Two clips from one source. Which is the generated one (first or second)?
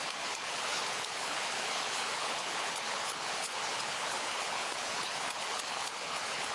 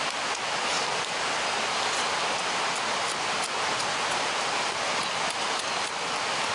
first